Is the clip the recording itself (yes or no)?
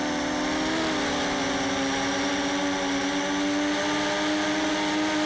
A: yes